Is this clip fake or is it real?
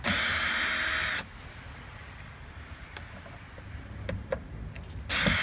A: real